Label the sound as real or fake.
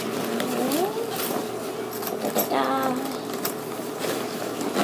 real